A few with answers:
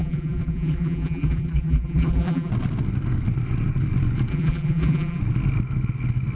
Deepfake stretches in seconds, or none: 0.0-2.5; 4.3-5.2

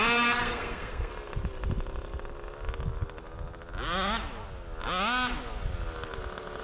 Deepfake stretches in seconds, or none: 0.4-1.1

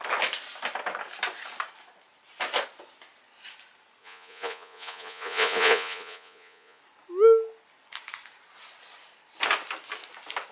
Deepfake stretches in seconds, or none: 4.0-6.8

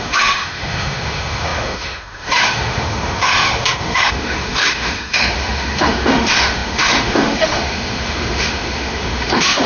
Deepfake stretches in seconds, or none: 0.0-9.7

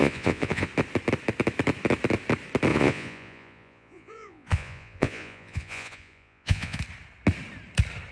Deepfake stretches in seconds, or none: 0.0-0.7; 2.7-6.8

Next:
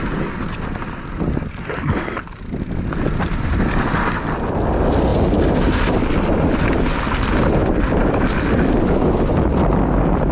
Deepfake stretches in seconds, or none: 5.1-6.5; 7.6-8.2

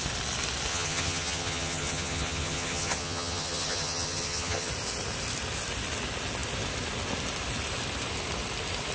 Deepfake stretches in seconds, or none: 0.7-4.7

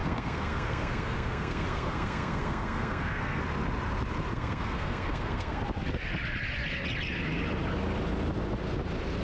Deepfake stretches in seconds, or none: 0.0-3.4; 4.3-5.6